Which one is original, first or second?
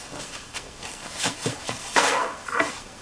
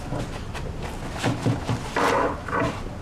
second